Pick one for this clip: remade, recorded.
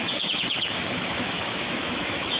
remade